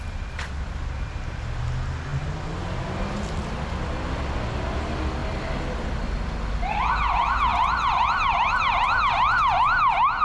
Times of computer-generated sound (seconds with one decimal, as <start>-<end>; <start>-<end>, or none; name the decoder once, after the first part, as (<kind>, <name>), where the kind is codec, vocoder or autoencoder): none